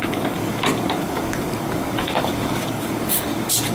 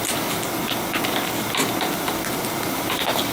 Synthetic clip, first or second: first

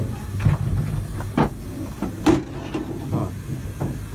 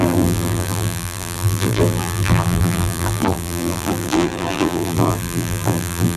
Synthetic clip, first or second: second